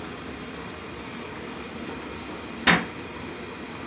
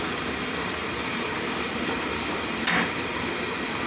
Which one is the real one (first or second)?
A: first